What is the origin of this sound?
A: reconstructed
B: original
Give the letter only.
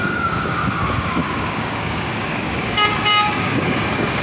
A